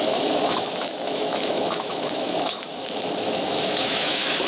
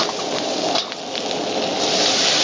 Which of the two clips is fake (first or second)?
first